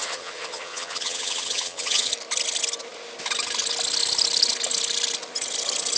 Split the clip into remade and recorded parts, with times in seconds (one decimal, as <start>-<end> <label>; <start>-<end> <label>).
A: 0.0-2.1 remade; 2.1-6.0 recorded